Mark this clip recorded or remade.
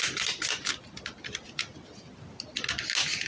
recorded